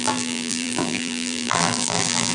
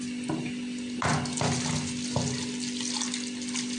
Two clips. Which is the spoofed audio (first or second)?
first